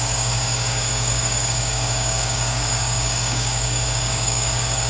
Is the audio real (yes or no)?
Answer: no